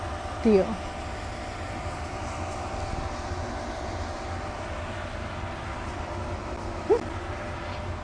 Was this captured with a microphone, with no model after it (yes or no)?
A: yes